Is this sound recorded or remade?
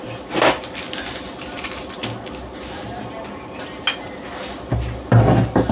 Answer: recorded